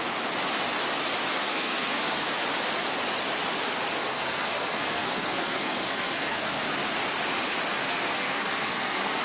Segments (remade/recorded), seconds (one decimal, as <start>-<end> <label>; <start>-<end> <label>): 0.0-1.5 recorded; 1.5-2.3 remade; 2.3-4.0 recorded; 4.0-6.6 remade; 6.6-7.8 recorded; 7.8-9.2 remade